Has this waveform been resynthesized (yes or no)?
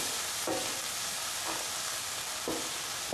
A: no